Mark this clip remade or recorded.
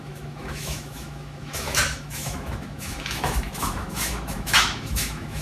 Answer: remade